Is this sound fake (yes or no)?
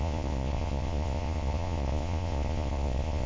yes